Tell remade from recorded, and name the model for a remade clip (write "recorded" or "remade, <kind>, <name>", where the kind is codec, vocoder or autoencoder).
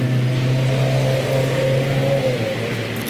recorded